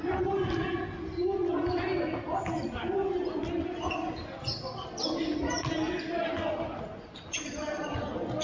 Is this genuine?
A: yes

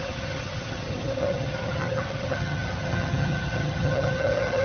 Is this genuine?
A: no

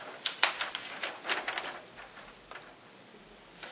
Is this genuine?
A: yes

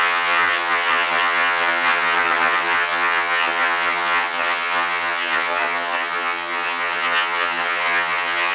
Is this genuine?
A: no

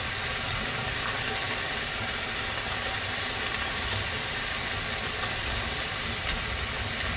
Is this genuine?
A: yes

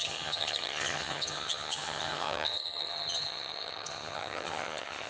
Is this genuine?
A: no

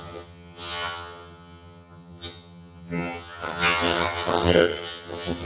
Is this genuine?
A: no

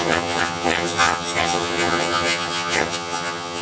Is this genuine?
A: no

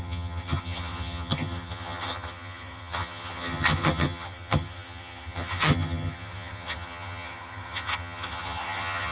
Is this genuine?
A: no